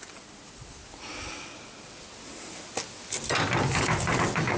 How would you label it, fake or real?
real